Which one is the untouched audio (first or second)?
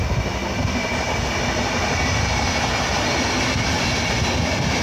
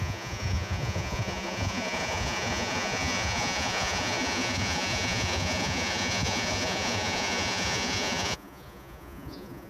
first